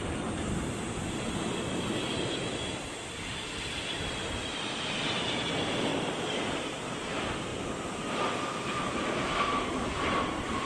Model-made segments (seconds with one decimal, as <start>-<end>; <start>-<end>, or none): 7.5-10.1